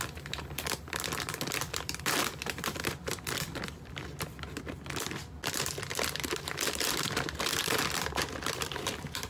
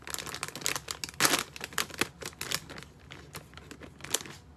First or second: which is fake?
first